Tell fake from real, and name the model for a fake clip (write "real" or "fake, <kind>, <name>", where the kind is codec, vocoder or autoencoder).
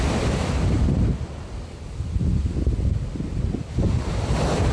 real